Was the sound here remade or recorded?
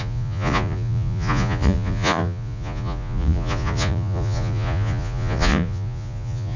remade